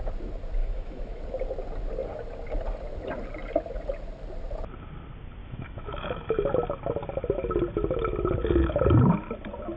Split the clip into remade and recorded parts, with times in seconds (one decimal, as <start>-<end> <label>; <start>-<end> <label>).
0.0-0.6 recorded; 0.6-1.2 remade; 1.2-5.4 recorded; 5.4-6.5 remade; 6.5-9.8 recorded